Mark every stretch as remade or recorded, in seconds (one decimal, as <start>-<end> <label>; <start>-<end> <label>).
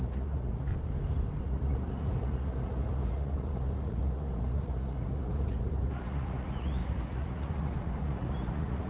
0.0-0.7 remade; 0.7-1.4 recorded; 1.4-8.9 remade